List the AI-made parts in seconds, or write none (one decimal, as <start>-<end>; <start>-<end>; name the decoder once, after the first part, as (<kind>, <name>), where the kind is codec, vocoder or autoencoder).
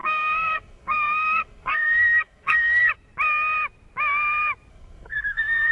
0.0-2.9 (codec, SNAC); 4.7-5.7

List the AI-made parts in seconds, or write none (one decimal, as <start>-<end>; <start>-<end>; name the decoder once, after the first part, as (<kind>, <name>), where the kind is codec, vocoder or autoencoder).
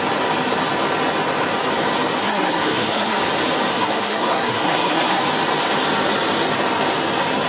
2.2-3.2 (codec, SNAC); 3.7-5.2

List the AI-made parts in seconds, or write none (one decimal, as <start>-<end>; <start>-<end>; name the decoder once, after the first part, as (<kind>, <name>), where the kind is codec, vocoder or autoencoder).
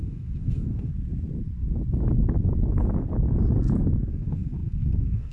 0.0-0.9 (codec, SNAC); 4.1-5.3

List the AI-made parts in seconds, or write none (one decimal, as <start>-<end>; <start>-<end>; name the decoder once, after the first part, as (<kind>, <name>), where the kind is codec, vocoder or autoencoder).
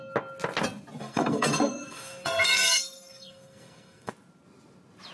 1.0-4.1 (codec, SNAC)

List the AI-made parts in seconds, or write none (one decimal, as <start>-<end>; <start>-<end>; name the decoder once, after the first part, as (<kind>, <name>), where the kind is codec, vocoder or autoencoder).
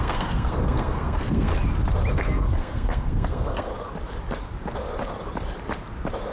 0.0-1.5 (codec, SNAC); 2.1-3.7